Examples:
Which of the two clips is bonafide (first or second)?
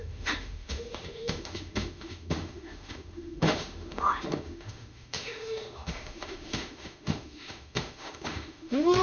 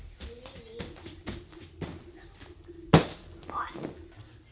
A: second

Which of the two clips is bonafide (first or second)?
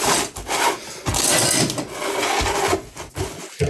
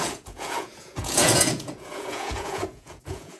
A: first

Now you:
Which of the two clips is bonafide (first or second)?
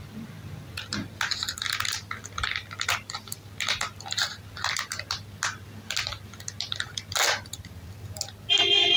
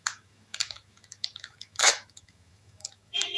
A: first